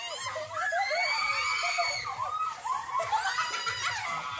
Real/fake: real